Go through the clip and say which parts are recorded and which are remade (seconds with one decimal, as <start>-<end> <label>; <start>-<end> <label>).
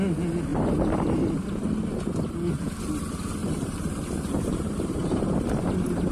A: 0.0-0.5 recorded; 0.5-1.4 remade; 1.4-3.4 recorded; 3.4-4.1 remade; 4.1-4.5 recorded; 4.5-5.4 remade; 5.4-6.1 recorded